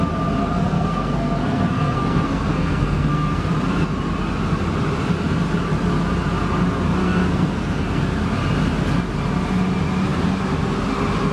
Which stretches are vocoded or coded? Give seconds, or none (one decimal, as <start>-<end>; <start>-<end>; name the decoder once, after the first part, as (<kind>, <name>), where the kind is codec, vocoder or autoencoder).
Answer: 0.4-3.5 (codec, SNAC); 7.0-8.0